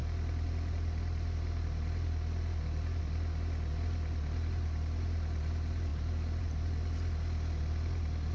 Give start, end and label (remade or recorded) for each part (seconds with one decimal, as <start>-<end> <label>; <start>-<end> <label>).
0.0-3.0 remade; 3.0-8.3 recorded

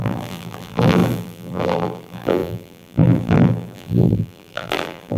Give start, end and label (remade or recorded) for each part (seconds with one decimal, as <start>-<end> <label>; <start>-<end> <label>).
0.0-5.2 remade